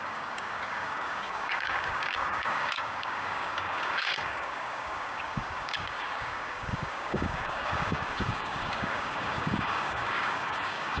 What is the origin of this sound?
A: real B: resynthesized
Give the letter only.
B